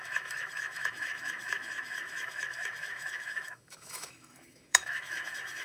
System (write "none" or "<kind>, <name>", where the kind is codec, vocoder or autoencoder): autoencoder, DAC-VAE